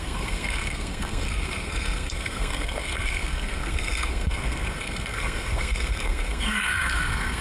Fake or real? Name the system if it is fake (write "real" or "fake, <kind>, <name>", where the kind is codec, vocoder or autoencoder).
fake, codec, SNAC